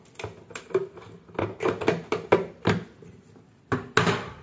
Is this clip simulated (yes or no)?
no